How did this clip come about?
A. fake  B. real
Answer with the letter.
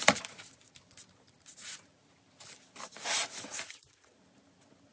B